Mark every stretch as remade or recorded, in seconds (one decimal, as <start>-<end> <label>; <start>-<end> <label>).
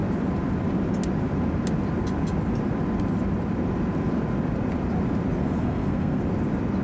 0.0-5.4 recorded; 5.4-6.2 remade; 6.2-6.8 recorded